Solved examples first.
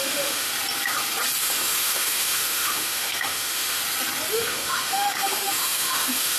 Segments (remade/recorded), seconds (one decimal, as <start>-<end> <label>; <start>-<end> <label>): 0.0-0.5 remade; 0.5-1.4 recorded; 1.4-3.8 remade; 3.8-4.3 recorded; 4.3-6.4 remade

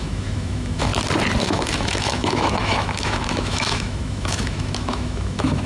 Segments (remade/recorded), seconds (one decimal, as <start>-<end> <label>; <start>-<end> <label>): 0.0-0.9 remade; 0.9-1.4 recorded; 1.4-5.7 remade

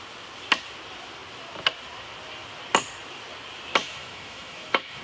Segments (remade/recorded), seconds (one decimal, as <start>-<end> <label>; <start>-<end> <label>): 0.0-3.8 recorded; 3.8-5.0 remade

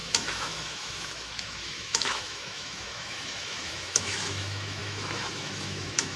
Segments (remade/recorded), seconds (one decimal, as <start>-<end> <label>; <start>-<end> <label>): 0.0-6.2 remade

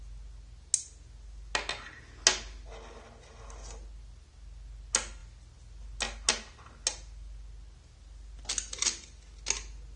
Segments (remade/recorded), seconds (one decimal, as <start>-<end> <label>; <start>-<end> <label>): 0.0-10.0 recorded

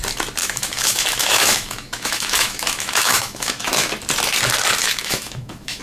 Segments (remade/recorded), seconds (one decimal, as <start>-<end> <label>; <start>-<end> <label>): 0.0-0.4 recorded; 0.4-3.9 remade; 3.9-4.8 recorded; 4.8-5.8 remade